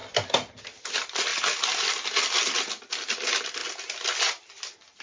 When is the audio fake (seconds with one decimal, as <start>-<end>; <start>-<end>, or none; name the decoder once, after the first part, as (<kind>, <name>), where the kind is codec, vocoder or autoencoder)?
0.6-1.3 (vocoder, BigVGAN v2); 2.9-3.6; 4.5-5.0